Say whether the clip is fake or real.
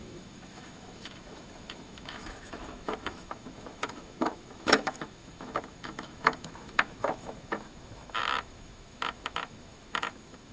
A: fake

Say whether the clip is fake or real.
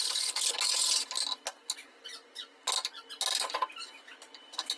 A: real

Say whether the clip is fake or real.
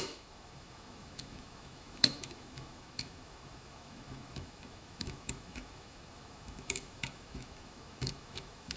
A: fake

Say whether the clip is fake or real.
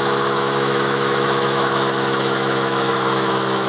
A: fake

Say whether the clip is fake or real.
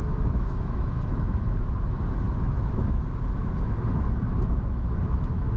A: fake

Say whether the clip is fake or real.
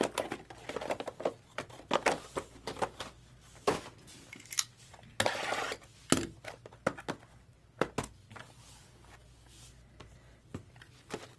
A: real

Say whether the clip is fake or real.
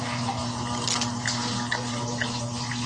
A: real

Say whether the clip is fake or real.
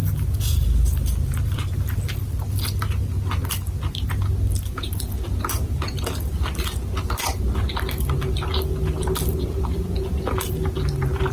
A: real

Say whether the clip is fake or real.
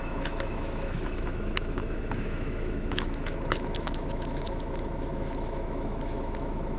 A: fake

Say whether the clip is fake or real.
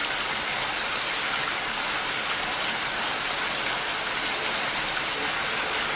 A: real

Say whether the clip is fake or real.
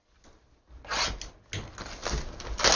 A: real